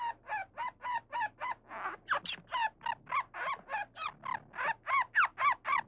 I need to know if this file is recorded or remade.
recorded